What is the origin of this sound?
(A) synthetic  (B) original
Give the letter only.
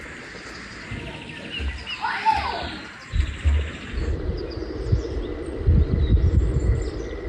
B